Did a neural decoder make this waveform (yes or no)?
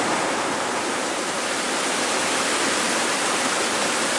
no